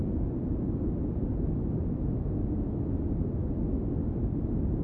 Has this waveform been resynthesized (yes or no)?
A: no